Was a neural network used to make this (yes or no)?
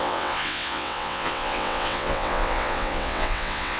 yes